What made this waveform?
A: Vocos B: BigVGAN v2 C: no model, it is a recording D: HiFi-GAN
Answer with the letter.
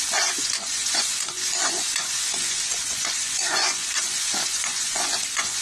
A